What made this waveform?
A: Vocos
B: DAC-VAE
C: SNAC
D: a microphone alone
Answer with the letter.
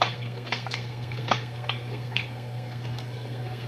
C